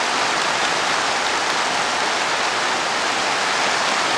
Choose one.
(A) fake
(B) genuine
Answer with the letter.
B